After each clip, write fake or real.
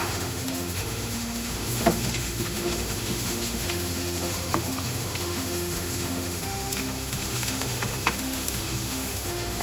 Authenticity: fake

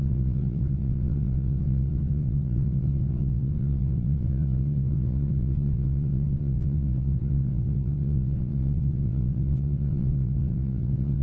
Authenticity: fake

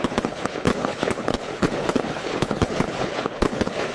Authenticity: fake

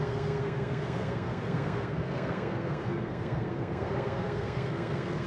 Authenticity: fake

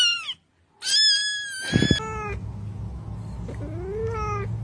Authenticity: real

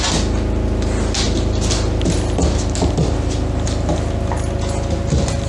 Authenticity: real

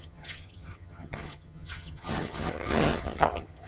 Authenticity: fake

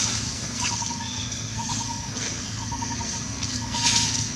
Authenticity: fake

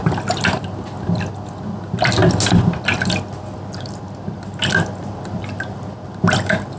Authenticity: real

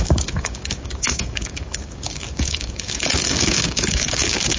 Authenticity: fake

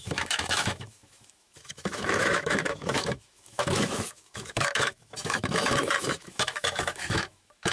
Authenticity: fake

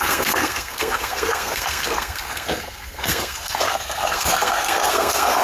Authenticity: fake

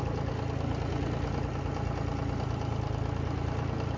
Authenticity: real